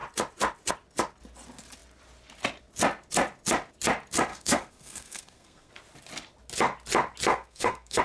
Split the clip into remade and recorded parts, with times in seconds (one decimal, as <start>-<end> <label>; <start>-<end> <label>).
0.0-4.3 recorded; 4.3-5.7 remade; 5.7-7.3 recorded; 7.3-8.0 remade